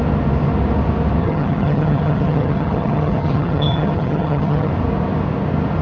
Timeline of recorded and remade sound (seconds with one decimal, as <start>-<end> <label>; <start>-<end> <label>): 0.0-1.2 recorded; 1.2-4.7 remade; 4.7-5.8 recorded